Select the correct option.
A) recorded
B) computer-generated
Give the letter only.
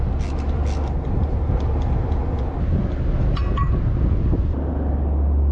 A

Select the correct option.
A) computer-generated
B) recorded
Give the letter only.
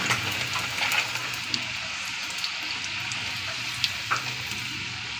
B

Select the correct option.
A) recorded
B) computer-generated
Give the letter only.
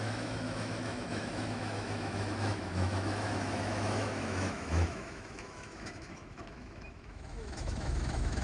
B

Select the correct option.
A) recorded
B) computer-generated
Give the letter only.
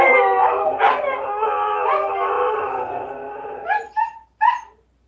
A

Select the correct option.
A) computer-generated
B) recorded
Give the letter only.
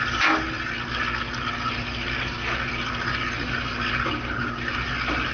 B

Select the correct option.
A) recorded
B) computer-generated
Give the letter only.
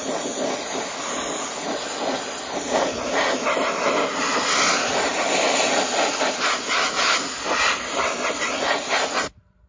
A